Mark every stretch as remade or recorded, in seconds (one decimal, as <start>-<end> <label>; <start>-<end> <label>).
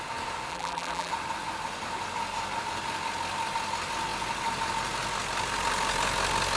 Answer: 0.0-0.5 recorded; 0.5-1.1 remade; 1.1-6.6 recorded